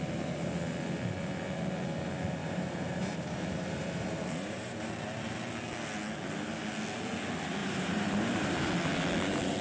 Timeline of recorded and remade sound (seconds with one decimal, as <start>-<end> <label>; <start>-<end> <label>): 0.0-2.4 recorded; 2.4-4.9 remade; 4.9-7.6 recorded; 7.6-8.7 remade; 8.7-9.6 recorded